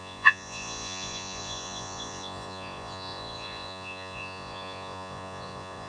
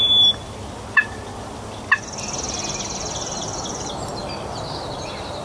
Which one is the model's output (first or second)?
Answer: first